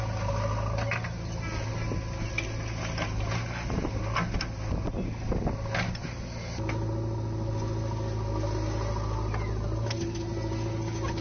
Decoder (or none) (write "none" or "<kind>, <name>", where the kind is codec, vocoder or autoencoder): none